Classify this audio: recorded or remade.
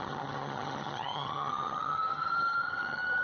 remade